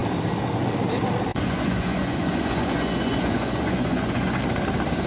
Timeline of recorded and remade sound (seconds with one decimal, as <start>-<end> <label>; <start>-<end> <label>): 0.0-1.3 recorded; 1.3-4.4 remade; 4.4-5.1 recorded